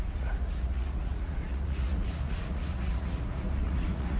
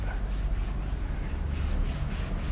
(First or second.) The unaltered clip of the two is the second